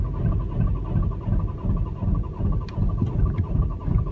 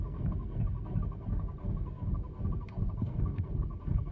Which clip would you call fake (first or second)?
second